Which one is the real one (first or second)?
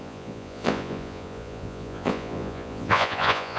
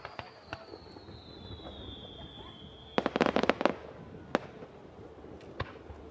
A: second